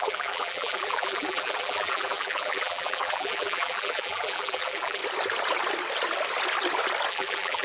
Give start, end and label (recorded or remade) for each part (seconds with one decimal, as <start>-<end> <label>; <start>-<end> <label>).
0.0-5.0 remade; 5.0-7.1 recorded; 7.1-7.6 remade